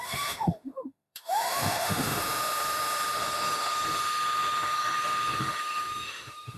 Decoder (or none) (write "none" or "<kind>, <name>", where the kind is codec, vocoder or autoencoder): autoencoder, DAC-VAE